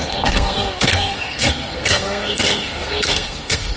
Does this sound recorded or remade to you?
remade